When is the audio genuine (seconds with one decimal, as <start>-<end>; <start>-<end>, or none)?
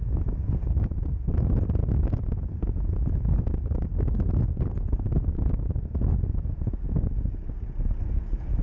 0.0-8.6